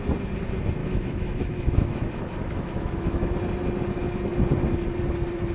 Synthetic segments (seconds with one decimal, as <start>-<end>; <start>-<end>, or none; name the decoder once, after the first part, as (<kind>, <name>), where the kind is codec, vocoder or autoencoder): 0.8-3.4 (autoencoder, DAC-VAE)

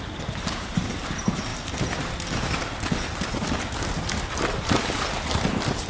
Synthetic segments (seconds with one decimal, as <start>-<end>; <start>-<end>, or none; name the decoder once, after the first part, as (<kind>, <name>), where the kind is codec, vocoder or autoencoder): none

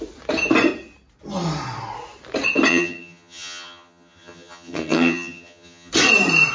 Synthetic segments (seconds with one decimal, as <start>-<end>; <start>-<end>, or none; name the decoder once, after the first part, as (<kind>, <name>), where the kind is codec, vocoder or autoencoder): 2.7-5.9 (vocoder, HiFi-GAN)

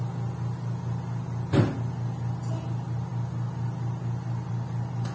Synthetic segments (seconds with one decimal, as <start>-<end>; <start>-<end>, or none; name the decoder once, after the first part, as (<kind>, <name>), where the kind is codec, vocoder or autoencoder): none

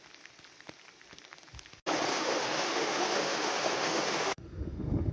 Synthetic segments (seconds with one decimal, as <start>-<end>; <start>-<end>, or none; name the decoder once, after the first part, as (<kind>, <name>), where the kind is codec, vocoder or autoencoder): 2.1-5.1 (autoencoder, DAC-VAE)